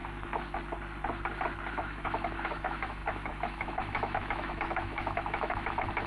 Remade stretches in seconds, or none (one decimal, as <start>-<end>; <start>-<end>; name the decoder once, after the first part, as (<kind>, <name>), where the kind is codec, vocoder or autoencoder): 1.7-6.1 (autoencoder, DAC-VAE)